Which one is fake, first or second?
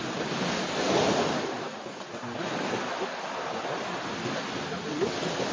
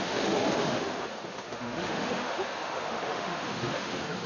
second